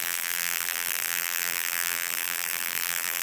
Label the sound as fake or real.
fake